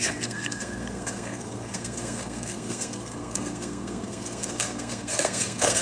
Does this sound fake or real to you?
fake